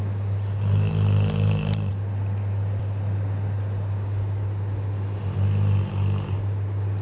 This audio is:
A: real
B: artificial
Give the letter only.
A